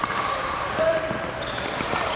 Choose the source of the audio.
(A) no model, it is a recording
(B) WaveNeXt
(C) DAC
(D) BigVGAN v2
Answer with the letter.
D